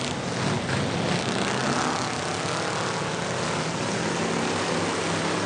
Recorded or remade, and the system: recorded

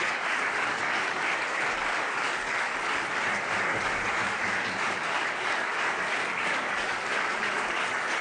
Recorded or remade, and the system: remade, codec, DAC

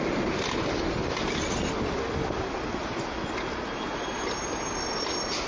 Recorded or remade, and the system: recorded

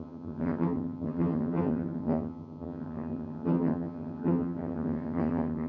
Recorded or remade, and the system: remade, vocoder, HiFi-GAN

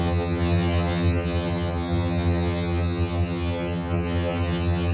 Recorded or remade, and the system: remade, vocoder, HiFi-GAN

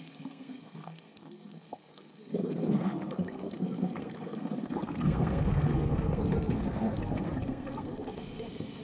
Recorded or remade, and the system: remade, codec, SNAC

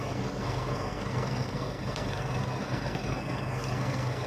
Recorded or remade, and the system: remade, codec, SNAC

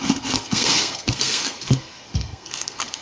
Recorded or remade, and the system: remade, codec, SNAC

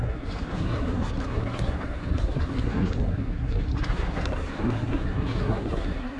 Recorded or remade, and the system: remade, codec, SNAC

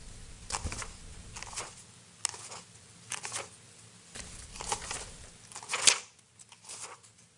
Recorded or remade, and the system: recorded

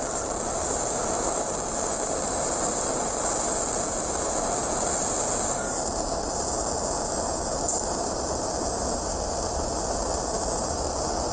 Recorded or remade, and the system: recorded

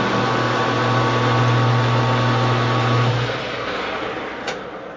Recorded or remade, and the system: recorded